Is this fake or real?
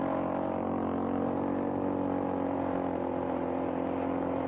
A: real